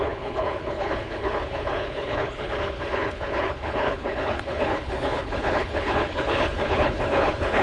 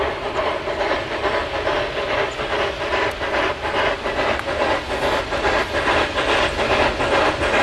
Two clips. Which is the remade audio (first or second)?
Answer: first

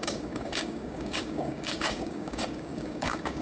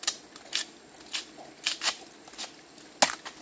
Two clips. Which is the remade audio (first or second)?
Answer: first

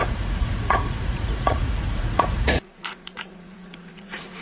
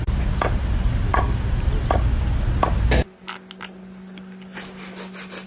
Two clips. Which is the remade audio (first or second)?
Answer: first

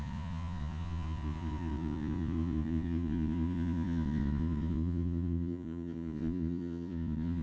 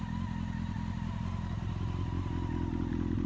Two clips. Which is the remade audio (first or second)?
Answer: first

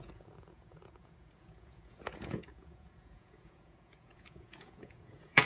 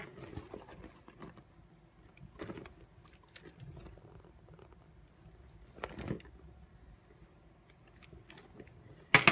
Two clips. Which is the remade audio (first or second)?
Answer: first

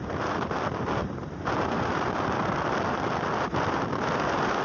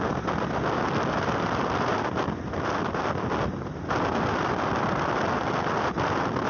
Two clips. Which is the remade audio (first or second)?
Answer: first